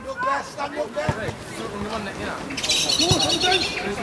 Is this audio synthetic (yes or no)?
no